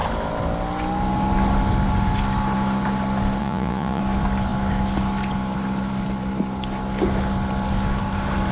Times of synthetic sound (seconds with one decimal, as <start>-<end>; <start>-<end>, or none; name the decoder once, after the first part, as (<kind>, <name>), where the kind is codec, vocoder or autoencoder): 3.4-4.0 (vocoder, Vocos)